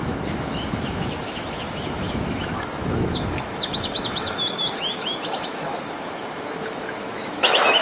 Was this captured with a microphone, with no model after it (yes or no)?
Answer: no